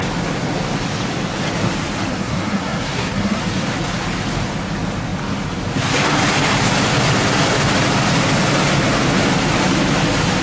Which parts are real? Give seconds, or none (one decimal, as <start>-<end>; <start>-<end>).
0.0-2.1; 3.4-10.4